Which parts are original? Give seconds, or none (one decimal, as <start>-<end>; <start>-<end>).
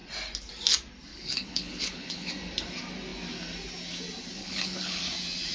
0.0-1.1; 2.3-4.4; 5.0-5.5